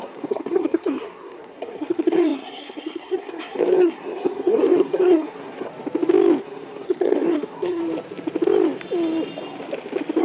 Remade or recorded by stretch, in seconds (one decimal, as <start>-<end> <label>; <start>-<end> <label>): 0.0-5.7 remade; 5.7-6.4 recorded; 6.4-7.8 remade; 7.8-10.2 recorded